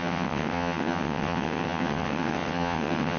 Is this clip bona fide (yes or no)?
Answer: no